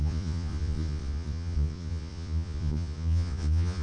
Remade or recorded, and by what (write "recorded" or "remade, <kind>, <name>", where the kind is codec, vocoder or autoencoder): remade, vocoder, Vocos